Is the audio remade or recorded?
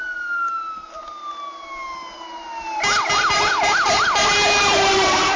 recorded